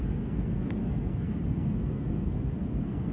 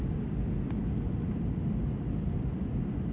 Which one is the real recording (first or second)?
second